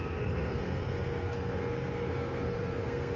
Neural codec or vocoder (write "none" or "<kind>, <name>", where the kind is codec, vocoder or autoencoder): codec, SNAC